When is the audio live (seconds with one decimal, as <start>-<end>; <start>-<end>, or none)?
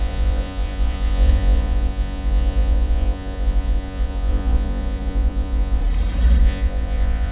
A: 5.8-6.4